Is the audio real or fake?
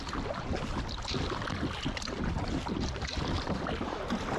real